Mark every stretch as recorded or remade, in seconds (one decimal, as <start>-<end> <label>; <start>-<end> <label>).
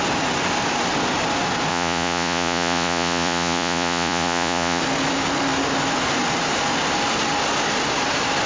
0.0-1.7 recorded; 1.7-4.8 remade; 4.8-8.5 recorded